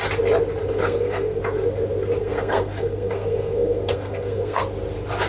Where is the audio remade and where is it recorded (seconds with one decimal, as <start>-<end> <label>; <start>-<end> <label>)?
0.0-0.6 recorded; 0.6-1.4 remade; 1.4-2.2 recorded; 2.2-4.6 remade; 4.6-5.3 recorded